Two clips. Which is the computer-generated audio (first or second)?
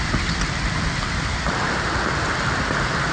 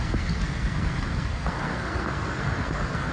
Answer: second